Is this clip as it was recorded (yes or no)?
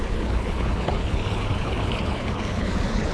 no